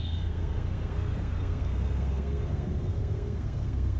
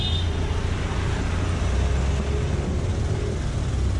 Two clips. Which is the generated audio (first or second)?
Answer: first